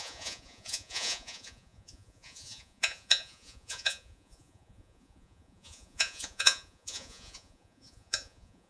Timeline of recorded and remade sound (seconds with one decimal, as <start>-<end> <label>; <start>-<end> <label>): 0.0-8.7 remade